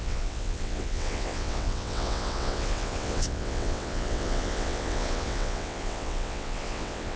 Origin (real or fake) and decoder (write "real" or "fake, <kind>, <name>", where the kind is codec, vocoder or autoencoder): fake, vocoder, WaveNeXt